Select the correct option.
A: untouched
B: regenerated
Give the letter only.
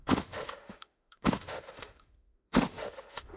B